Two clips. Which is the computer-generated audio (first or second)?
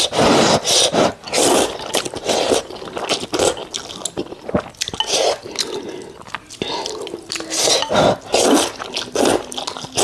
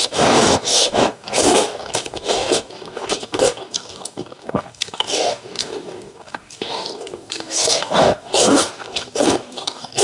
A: second